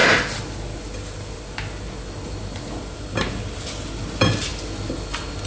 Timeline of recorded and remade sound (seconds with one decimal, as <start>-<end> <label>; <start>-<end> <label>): 0.0-5.5 recorded